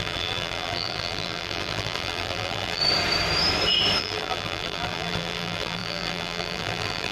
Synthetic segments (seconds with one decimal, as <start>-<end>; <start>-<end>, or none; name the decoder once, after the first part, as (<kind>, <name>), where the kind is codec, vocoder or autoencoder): 0.0-2.8 (vocoder, BigVGAN v2); 4.0-7.1